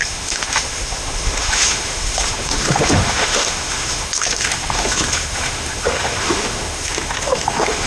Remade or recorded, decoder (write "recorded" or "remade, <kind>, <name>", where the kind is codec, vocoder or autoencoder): remade, autoencoder, DAC-VAE